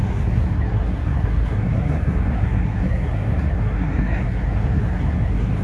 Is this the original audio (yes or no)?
no